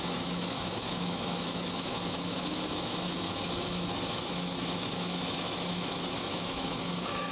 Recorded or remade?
remade